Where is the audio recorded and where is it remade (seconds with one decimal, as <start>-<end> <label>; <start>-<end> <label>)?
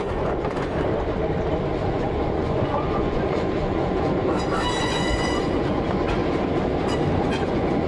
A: 0.0-0.7 remade; 0.7-1.8 recorded; 1.8-4.2 remade; 4.2-4.8 recorded; 4.8-6.2 remade; 6.2-7.2 recorded; 7.2-7.9 remade